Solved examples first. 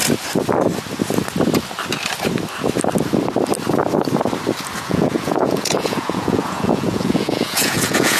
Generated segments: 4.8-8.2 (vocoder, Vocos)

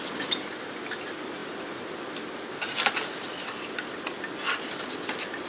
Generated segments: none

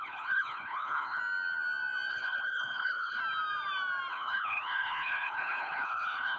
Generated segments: 0.0-1.2 (codec, HILCodec); 2.1-3.2; 4.1-6.4